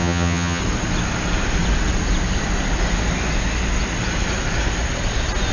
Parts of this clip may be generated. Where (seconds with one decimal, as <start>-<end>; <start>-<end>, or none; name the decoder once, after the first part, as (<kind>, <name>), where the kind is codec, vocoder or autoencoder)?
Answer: 0.0-0.6 (vocoder, HiFi-GAN)

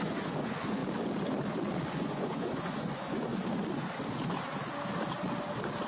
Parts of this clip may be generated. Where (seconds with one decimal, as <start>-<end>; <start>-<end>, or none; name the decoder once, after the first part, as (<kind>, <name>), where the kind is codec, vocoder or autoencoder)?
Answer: 0.0-0.8 (vocoder, Vocos); 1.9-3.3

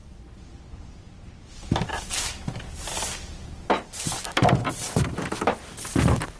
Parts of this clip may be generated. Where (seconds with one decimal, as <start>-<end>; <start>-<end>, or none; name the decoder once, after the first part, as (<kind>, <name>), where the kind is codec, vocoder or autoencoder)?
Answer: none